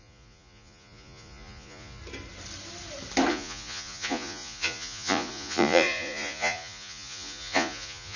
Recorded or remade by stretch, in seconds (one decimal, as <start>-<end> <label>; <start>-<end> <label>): 0.0-2.0 remade; 2.0-3.3 recorded; 3.3-8.2 remade